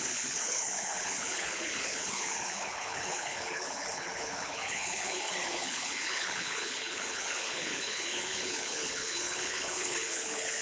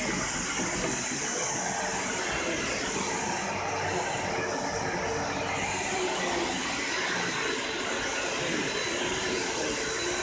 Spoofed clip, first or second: first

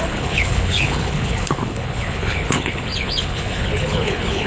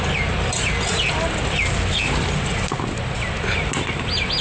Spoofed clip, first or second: first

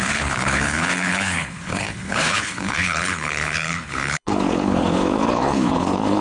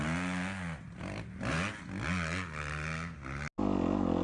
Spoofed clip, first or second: first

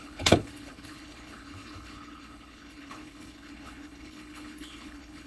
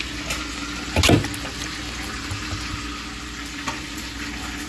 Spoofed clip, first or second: first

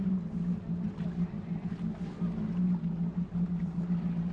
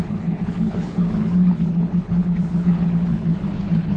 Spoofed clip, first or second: second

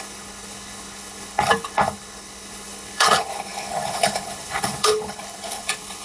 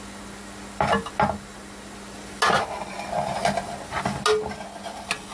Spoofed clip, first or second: first